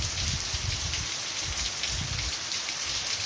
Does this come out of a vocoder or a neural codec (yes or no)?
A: yes